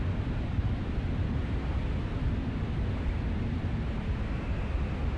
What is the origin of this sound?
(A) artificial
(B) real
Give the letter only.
B